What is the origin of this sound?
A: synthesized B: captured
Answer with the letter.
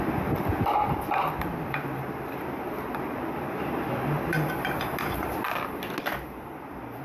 B